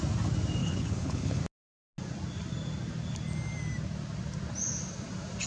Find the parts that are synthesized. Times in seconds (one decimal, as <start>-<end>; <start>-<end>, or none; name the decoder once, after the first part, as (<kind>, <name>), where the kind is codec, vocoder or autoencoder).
0.6-1.4 (codec, HILCodec)

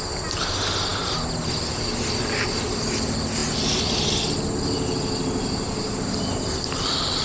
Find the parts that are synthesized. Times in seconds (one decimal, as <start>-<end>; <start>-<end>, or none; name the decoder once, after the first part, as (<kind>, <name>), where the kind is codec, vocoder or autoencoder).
none

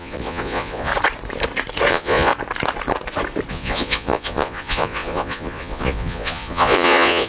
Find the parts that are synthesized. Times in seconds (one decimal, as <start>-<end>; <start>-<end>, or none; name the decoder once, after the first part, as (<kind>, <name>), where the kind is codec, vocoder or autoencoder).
0.0-0.9 (vocoder, Vocos); 1.9-2.3; 3.5-7.3